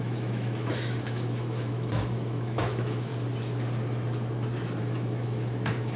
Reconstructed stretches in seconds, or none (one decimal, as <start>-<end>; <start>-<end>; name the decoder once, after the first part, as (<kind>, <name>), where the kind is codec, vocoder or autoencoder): 0.0-3.1 (autoencoder, DAC-VAE); 4.8-6.0